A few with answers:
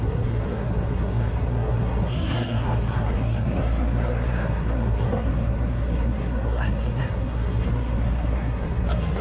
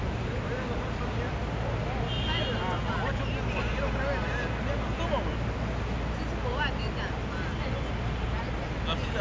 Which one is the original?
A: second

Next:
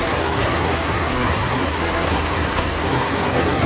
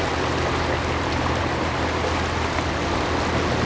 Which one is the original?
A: second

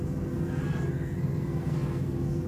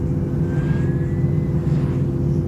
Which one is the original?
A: second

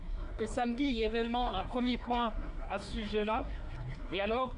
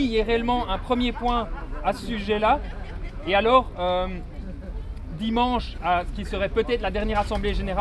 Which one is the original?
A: second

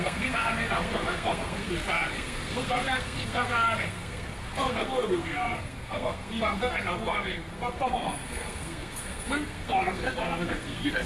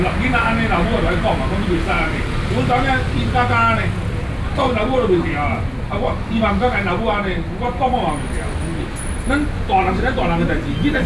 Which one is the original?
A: second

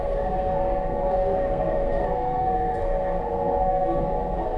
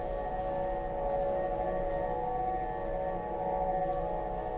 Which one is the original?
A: second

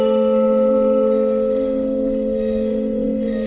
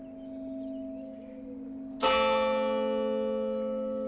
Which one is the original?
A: second